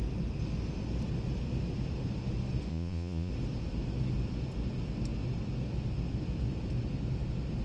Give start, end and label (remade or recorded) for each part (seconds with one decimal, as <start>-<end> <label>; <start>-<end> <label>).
0.0-2.7 recorded; 2.7-3.3 remade; 3.3-7.6 recorded